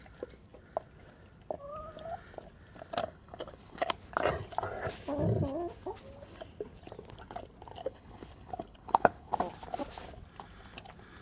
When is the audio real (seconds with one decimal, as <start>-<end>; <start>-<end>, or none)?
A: 0.0-3.0; 3.9-7.8; 9.3-11.2